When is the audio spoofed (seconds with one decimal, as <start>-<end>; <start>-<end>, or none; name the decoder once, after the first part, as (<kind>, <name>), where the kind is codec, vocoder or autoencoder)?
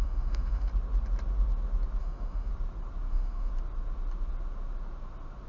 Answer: 0.0-0.7 (autoencoder, DAC-VAE); 2.0-2.5; 3.1-3.5